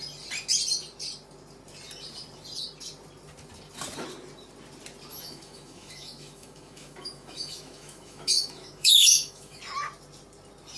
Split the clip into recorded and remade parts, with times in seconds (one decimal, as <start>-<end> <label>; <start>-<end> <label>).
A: 0.0-5.1 recorded; 5.1-9.6 remade; 9.6-10.8 recorded